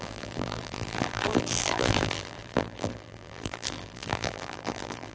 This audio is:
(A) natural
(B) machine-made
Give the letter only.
B